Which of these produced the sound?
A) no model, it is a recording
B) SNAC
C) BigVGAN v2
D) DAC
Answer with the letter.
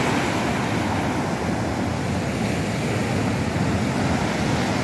A